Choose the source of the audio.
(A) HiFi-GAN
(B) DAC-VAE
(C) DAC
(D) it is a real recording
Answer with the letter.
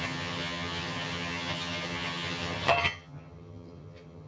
A